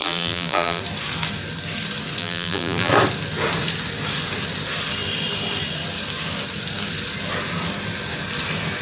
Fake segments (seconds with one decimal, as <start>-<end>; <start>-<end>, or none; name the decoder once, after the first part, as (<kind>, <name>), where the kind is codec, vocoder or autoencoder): 0.0-0.8 (vocoder, BigVGAN v2); 2.2-2.9